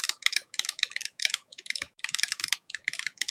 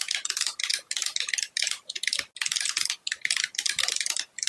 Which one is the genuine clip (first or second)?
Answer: second